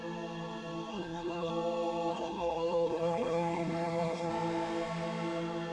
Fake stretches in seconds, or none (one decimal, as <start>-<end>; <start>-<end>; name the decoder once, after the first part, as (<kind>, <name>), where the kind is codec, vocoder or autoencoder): 0.9-1.5 (codec, SNAC); 2.1-4.3